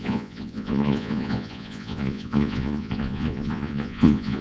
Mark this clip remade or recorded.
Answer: remade